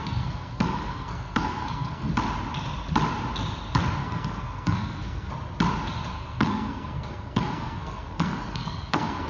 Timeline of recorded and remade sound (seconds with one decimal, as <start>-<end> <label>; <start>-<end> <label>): 0.0-2.1 remade; 2.1-4.0 recorded; 4.0-5.3 remade; 5.3-6.1 recorded; 6.1-9.3 remade